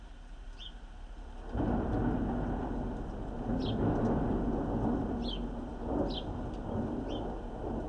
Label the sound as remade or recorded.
recorded